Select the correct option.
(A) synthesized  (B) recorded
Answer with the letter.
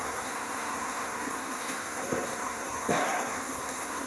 A